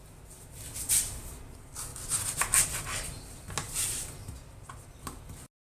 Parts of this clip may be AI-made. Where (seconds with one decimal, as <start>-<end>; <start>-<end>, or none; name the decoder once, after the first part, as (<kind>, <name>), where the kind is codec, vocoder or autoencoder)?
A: none